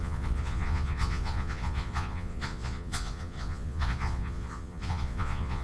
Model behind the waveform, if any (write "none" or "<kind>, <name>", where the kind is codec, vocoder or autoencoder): vocoder, Vocos